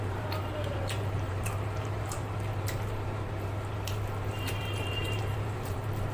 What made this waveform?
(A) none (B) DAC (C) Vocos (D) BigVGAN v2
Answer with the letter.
D